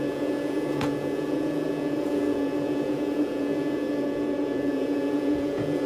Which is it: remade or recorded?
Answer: remade